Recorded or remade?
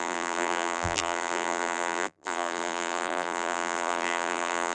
remade